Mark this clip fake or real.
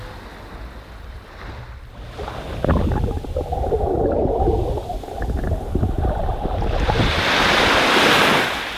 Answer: real